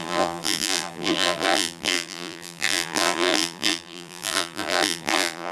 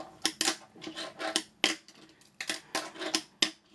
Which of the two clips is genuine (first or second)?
second